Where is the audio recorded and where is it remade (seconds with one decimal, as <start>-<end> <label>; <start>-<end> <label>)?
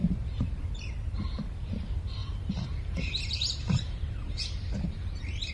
0.0-0.6 remade; 0.6-2.2 recorded; 2.2-5.5 remade